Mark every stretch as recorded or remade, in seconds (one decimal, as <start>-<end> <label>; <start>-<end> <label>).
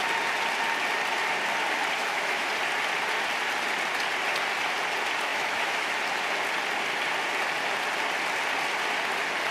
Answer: 0.0-2.0 recorded; 2.0-2.5 remade; 2.5-5.3 recorded; 5.3-5.9 remade; 5.9-9.5 recorded